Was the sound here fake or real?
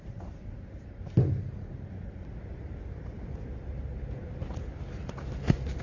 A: real